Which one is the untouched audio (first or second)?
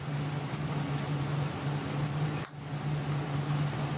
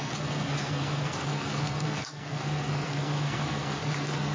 first